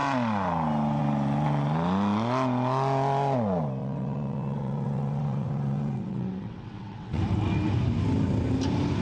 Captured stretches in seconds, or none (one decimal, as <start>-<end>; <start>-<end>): 0.0-3.8; 7.2-9.0